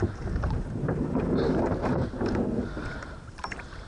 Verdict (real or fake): fake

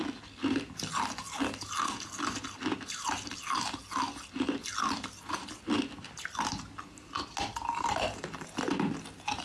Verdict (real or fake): real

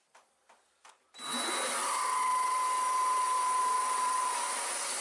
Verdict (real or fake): fake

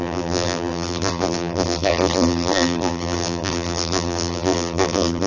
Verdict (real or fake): fake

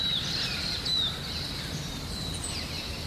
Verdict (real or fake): fake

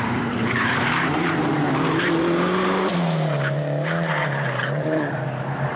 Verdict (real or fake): fake